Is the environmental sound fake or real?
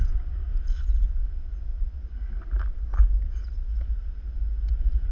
real